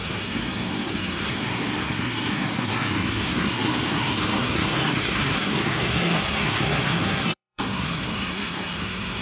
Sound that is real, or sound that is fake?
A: fake